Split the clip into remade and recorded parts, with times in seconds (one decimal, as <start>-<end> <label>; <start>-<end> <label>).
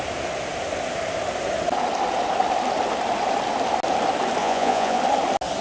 0.0-4.4 recorded; 4.4-5.0 remade; 5.0-5.6 recorded